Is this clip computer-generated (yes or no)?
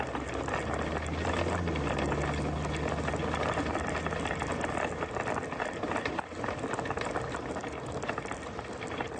no